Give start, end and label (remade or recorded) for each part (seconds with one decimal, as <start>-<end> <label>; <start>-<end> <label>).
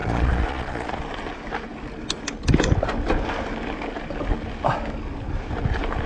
0.0-0.9 remade; 0.9-6.1 recorded